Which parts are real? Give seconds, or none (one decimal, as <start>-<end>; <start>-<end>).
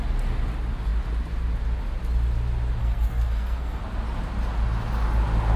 0.0-2.8; 3.8-5.6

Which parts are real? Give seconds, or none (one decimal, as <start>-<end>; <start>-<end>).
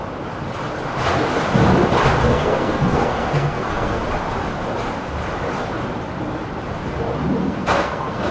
0.0-2.3; 4.0-7.4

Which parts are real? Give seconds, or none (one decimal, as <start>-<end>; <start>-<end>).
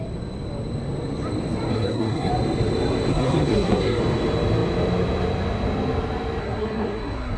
0.0-1.7; 2.3-3.1; 4.0-6.4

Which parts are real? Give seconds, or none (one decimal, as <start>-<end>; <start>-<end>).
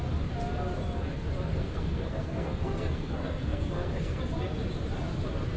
0.0-1.5; 4.2-5.6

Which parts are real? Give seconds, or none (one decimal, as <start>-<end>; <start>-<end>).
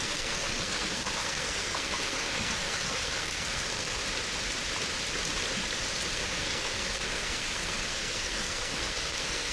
4.0-6.1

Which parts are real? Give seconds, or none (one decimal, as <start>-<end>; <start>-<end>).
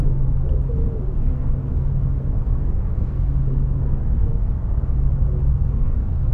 0.0-1.3; 5.1-5.5